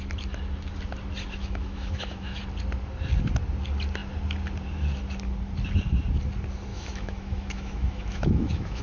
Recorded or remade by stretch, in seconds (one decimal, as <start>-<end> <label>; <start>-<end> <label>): 0.0-1.4 recorded; 1.4-2.4 remade; 2.4-6.7 recorded; 6.7-8.8 remade